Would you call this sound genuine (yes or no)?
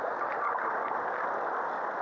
yes